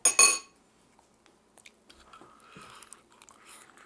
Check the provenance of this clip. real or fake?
real